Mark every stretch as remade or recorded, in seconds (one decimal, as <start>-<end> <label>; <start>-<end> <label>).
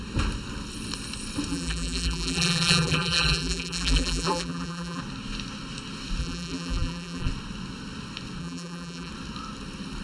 0.0-1.5 recorded; 1.5-5.0 remade; 5.0-6.2 recorded; 6.2-7.3 remade; 7.3-8.4 recorded; 8.4-9.1 remade; 9.1-10.0 recorded